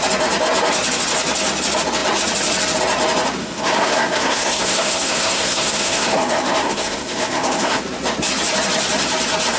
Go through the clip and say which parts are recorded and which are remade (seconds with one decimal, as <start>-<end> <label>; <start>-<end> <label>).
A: 0.0-3.4 recorded; 3.4-7.8 remade; 7.8-9.6 recorded